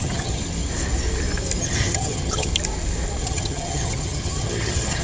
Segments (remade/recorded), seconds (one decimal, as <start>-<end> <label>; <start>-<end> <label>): 0.0-0.4 remade; 0.4-1.6 recorded; 1.6-2.5 remade; 2.5-3.2 recorded; 3.2-5.0 remade